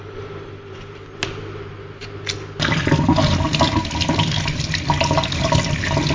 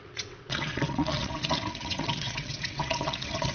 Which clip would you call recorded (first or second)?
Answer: first